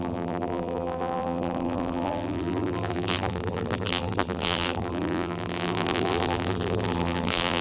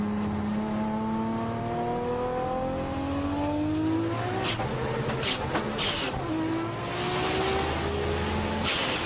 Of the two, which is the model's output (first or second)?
first